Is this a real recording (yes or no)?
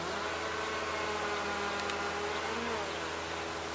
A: yes